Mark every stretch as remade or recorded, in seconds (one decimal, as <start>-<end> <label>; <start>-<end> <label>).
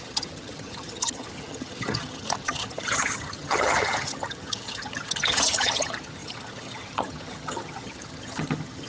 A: 0.0-8.9 remade